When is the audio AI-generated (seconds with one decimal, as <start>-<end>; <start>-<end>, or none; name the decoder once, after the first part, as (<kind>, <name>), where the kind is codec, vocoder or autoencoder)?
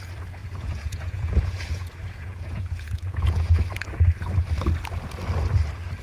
0.4-3.6 (vocoder, Vocos)